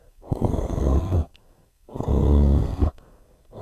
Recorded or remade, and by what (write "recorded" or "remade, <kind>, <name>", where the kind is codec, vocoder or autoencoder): remade, codec, SNAC